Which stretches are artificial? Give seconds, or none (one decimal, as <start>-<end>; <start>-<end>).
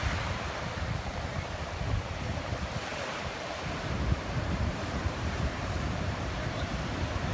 1.1-1.9; 2.9-6.5